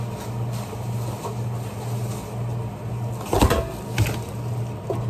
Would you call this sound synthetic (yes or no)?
no